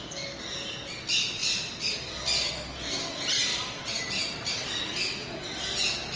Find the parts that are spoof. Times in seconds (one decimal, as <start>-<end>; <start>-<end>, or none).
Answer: 1.4-2.5; 3.5-4.1